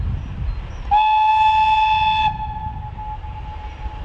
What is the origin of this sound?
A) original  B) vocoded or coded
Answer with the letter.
A